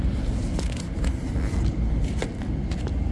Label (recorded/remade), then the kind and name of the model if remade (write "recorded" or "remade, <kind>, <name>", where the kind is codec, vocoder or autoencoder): recorded